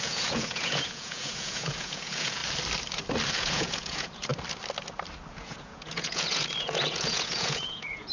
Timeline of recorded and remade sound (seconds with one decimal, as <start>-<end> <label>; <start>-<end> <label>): 0.0-2.4 remade; 2.4-3.3 recorded; 3.3-4.3 remade; 4.3-5.3 recorded; 5.3-8.1 remade